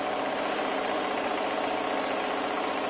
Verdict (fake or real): fake